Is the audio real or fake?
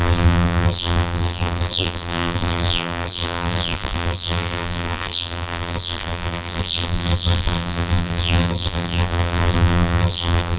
fake